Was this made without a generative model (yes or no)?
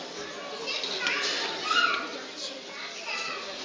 yes